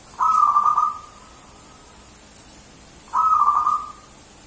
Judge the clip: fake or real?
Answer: real